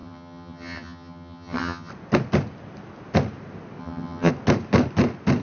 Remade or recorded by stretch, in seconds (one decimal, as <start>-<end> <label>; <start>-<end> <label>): 0.0-1.9 remade; 1.9-3.8 recorded; 3.8-4.3 remade; 4.3-5.4 recorded